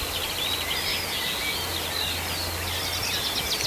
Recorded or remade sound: recorded